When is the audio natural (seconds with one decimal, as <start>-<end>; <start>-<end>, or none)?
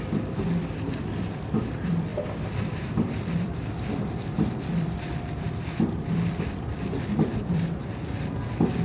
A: none